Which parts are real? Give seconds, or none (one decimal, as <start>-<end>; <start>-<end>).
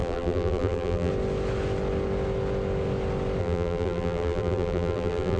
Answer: 1.1-3.4